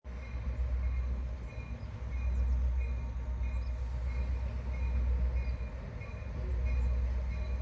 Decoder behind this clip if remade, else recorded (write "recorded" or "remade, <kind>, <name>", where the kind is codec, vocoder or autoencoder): recorded